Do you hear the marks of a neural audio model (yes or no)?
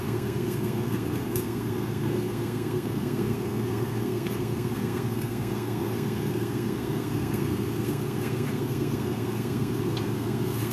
yes